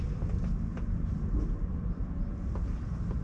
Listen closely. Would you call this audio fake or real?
fake